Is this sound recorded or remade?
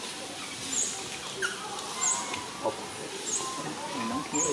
recorded